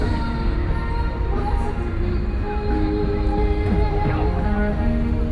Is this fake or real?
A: real